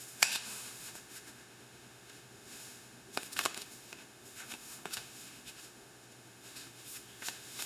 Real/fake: fake